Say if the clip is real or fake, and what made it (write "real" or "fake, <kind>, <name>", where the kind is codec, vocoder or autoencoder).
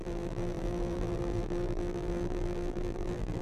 fake, vocoder, BigVGAN v2